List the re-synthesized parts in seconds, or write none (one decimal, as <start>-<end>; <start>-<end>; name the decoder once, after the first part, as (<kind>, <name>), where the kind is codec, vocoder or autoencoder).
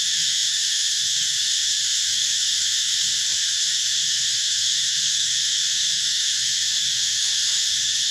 0.0-8.1 (autoencoder, DAC-VAE)